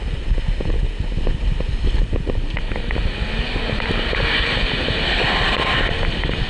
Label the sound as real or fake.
real